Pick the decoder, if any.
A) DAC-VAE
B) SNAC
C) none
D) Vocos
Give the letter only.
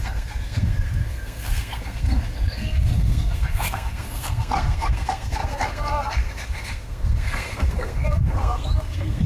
B